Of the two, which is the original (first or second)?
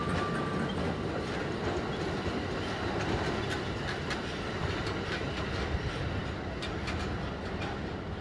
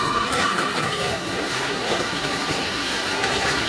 first